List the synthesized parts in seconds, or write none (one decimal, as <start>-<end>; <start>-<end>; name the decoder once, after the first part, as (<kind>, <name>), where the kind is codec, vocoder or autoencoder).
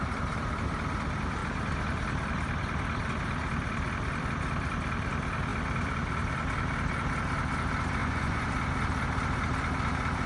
8.0-8.5 (vocoder, Vocos)